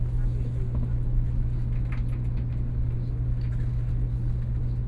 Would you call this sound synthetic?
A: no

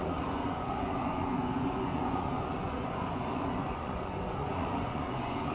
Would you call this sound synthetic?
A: yes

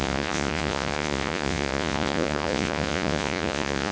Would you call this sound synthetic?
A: yes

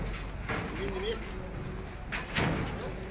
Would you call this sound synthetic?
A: no